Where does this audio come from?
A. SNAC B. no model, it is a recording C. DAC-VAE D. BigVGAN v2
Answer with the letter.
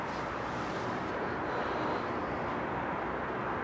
D